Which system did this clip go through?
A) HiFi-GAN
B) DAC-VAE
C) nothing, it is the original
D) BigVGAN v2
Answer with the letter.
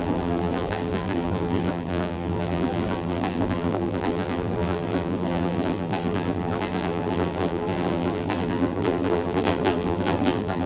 D